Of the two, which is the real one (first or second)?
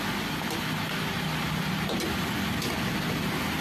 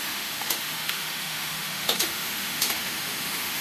first